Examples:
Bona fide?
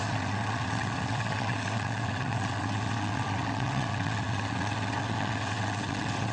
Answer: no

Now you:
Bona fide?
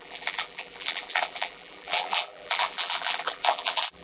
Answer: no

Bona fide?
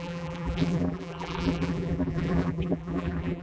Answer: no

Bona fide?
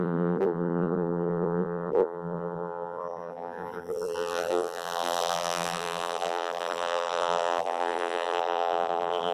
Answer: no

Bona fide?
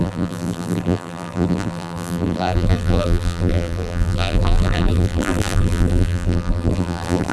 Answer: no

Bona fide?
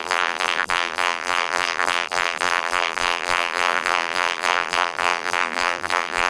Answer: no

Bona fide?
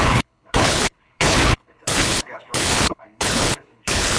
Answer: no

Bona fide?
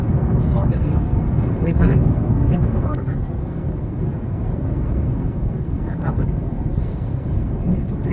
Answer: no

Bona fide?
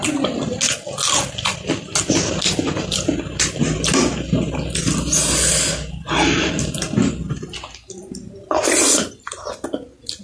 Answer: yes